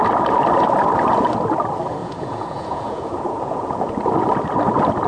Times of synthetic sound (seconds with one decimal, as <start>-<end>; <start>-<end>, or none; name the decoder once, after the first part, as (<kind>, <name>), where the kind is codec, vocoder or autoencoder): 2.0-3.9 (vocoder, Vocos)